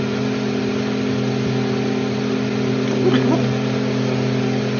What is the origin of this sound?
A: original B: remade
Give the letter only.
A